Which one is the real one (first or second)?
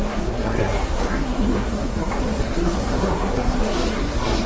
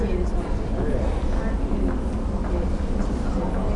second